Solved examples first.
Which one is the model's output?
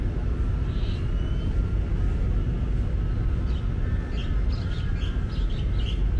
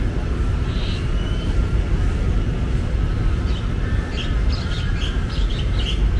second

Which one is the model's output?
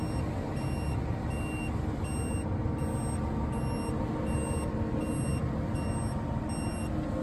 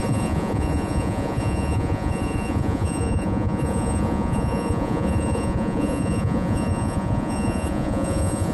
second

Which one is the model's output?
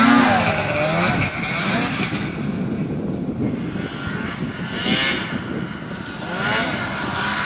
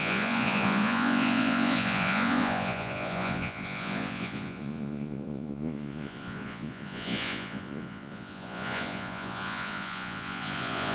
second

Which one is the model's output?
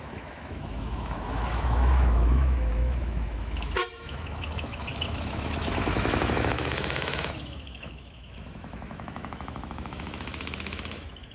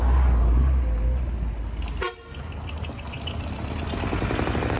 first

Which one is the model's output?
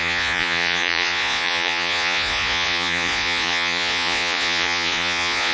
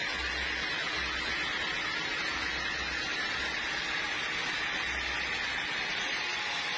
first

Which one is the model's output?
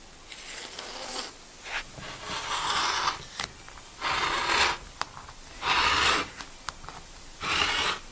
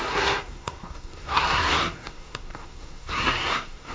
second